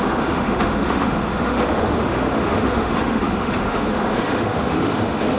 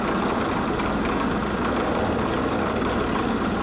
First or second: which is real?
second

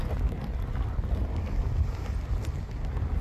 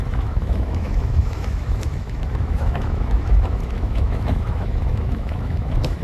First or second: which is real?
first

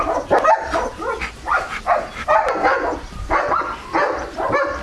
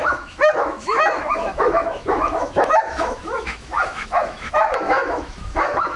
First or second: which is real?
first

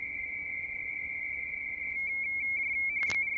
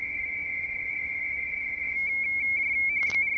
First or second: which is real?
first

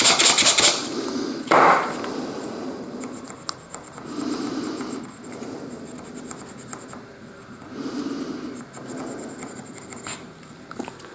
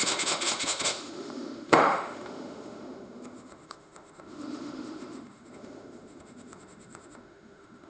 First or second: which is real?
first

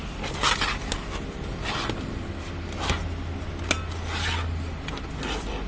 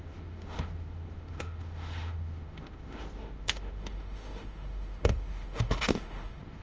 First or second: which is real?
first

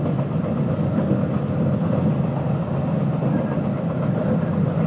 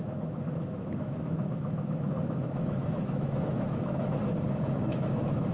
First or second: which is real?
first